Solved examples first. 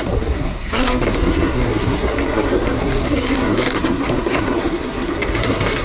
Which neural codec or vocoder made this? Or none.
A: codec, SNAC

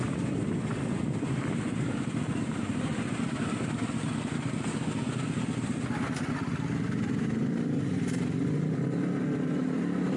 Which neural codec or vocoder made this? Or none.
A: none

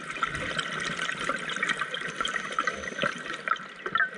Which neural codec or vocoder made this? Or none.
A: none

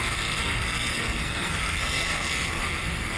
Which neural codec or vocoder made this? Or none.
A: codec, SNAC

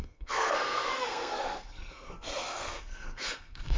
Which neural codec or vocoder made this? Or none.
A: codec, SNAC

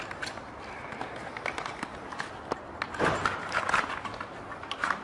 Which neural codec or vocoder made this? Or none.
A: none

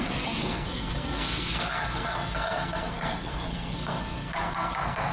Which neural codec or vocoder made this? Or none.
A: codec, SNAC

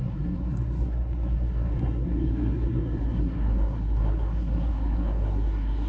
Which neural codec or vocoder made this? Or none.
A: codec, SNAC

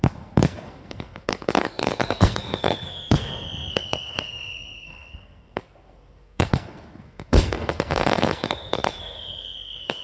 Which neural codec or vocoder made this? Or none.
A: codec, SNAC